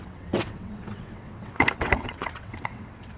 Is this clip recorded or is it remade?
remade